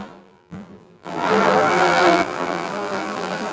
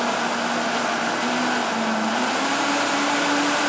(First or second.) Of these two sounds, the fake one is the first